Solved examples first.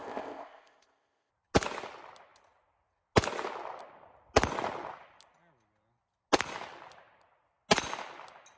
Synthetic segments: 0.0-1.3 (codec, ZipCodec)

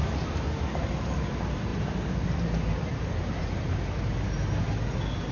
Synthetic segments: none

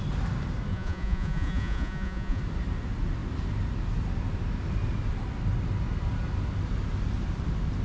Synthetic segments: 0.7-2.4 (vocoder, Vocos)

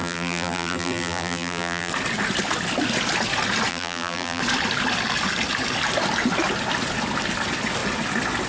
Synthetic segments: 0.0-1.9 (vocoder, BigVGAN v2); 3.7-4.4

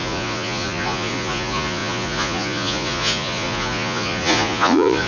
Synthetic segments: 0.0-5.1 (vocoder, Vocos)

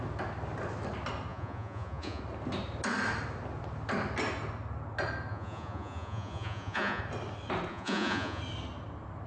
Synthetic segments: 1.3-2.2 (vocoder, Vocos); 5.3-7.0; 7.7-8.4

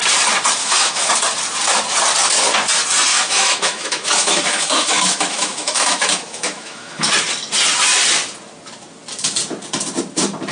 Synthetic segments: 0.6-1.1 (autoencoder, DAC-VAE); 3.1-7.1